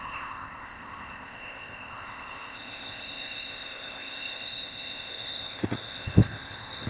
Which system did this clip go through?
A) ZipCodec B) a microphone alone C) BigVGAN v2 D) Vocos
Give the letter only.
A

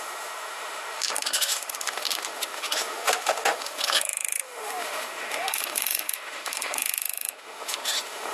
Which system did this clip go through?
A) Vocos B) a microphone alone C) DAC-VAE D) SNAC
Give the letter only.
C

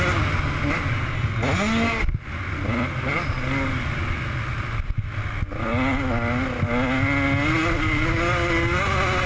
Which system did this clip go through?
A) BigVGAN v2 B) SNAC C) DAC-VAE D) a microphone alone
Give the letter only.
D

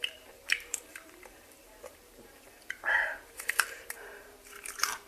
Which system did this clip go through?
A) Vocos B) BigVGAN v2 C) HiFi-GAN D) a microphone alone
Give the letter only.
B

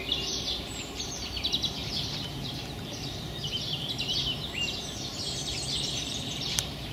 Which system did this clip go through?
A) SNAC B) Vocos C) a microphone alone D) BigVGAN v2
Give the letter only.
D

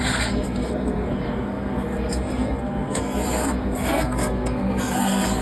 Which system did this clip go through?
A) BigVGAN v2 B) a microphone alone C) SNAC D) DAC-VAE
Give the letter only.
C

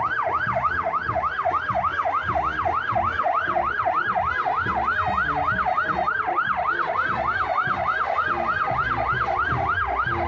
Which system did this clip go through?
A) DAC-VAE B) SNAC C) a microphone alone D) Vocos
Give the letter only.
C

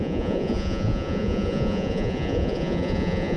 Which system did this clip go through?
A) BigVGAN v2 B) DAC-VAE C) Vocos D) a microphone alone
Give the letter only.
C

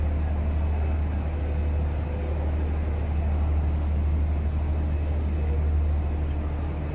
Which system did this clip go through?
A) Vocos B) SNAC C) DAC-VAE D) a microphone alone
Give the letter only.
D